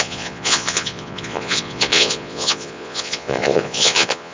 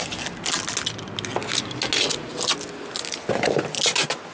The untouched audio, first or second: second